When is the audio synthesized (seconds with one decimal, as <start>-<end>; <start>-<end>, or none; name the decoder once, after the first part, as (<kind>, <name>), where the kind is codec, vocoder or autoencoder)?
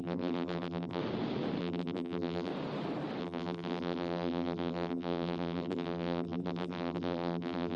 0.0-1.0 (vocoder, BigVGAN v2); 1.6-2.5; 3.2-7.8